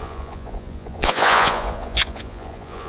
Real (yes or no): no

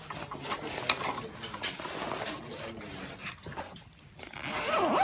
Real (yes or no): yes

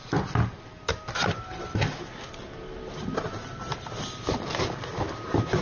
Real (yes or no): yes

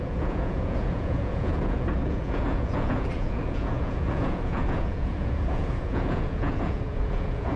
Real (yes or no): no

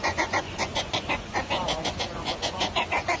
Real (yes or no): no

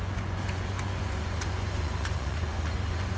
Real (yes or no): no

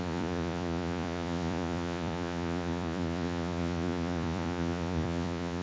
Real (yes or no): no